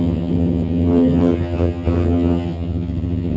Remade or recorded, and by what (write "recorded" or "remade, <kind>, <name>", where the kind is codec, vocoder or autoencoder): remade, vocoder, HiFi-GAN